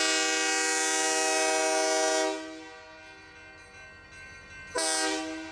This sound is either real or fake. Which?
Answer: real